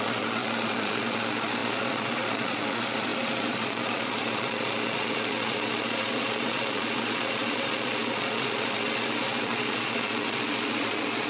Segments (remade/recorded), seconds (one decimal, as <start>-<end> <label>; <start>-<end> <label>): 0.0-11.3 remade